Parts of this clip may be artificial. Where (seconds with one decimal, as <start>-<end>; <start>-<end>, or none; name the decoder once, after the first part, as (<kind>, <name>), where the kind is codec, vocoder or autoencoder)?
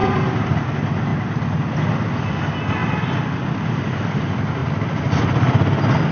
0.7-1.1 (vocoder, BigVGAN v2); 2.2-2.8; 3.5-4.6; 5.2-6.1